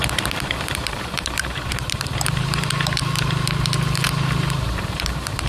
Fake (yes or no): yes